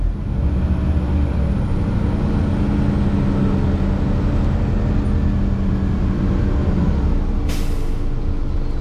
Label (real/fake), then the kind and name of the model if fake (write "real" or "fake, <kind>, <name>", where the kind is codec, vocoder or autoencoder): real